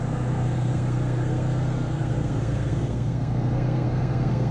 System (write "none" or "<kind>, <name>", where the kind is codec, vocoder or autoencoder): codec, SNAC